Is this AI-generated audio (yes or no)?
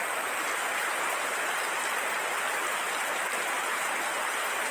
yes